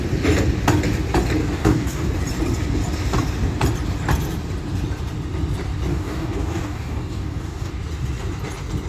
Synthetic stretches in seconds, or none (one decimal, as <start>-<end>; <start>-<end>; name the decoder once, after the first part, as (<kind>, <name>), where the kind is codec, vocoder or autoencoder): 1.4-2.1 (codec, DAC); 5.9-7.7

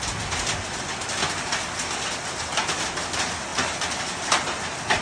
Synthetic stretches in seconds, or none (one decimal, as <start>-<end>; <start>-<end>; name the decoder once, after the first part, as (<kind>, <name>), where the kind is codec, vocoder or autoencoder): 3.5-4.6 (vocoder, BigVGAN v2)

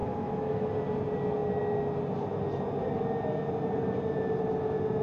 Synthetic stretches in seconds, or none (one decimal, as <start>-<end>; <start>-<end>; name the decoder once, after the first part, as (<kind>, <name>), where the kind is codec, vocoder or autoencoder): 0.0-0.7 (autoencoder, DAC-VAE)

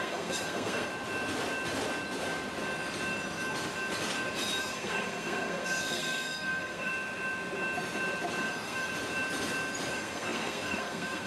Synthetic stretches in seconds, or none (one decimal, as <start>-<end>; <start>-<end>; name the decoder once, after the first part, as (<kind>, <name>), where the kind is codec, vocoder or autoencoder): 0.0-0.9 (codec, SNAC); 4.6-6.9; 8.4-8.9; 9.9-11.3

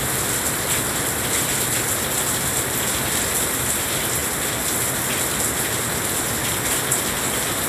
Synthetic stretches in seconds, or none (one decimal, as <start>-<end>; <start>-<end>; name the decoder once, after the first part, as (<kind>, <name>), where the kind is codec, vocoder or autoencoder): none

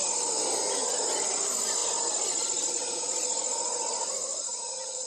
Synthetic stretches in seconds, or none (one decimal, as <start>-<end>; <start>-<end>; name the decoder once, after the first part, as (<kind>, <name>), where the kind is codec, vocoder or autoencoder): 4.3-5.1 (vocoder, BigVGAN v2)

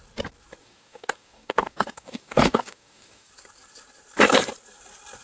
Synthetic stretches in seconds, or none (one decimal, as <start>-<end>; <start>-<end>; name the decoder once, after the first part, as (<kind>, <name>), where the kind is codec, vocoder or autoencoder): 0.6-3.3 (codec, DAC)

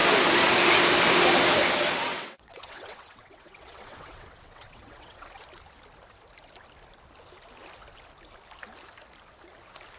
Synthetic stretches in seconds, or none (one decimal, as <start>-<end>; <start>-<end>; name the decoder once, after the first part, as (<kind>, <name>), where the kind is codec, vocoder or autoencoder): 2.1-5.4 (vocoder, WaveNeXt)